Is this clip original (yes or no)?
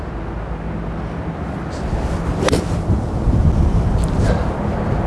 yes